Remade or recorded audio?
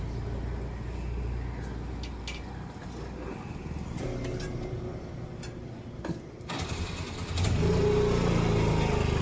recorded